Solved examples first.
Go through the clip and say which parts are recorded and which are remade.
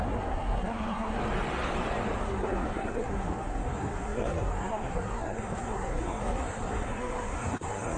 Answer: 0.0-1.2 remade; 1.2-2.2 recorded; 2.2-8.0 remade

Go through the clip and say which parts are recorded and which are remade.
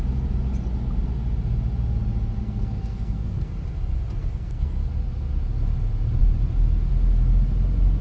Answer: 0.0-2.4 recorded; 2.4-3.5 remade; 3.5-4.2 recorded; 4.2-4.9 remade; 4.9-8.0 recorded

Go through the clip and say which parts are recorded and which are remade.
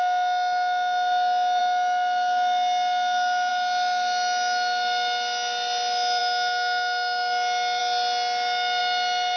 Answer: 0.0-9.4 recorded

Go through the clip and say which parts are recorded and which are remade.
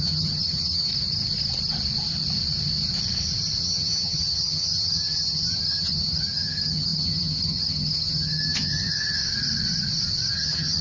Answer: 0.0-0.9 remade; 0.9-3.6 recorded; 3.6-9.2 remade; 9.2-10.3 recorded; 10.3-10.8 remade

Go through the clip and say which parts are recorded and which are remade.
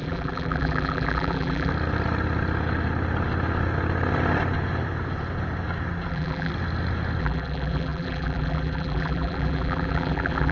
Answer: 0.0-1.7 remade; 1.7-6.1 recorded; 6.1-6.5 remade; 6.5-7.2 recorded; 7.2-10.5 remade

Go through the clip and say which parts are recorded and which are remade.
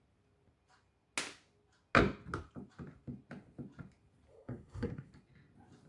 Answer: 0.0-4.3 recorded; 4.3-5.1 remade; 5.1-5.9 recorded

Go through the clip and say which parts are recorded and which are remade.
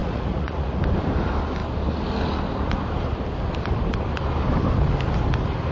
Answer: 0.0-0.8 remade; 0.8-5.7 recorded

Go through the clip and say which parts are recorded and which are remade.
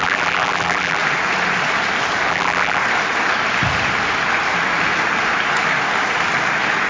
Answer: 0.0-1.0 remade; 1.0-2.3 recorded; 2.3-2.8 remade; 2.8-6.9 recorded